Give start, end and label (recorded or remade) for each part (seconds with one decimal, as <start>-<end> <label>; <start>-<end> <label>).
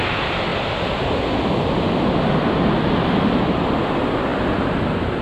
0.0-5.2 recorded